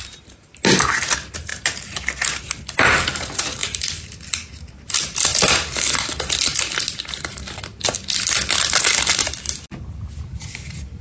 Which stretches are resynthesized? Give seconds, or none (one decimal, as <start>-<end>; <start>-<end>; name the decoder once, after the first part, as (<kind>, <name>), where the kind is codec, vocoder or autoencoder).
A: none